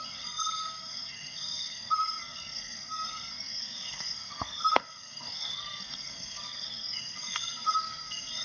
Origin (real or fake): fake